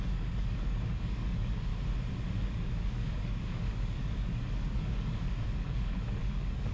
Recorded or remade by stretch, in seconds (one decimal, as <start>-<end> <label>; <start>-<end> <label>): 0.0-1.7 remade; 1.7-2.3 recorded; 2.3-6.7 remade